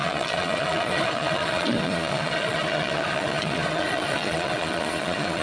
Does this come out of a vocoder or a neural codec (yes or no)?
yes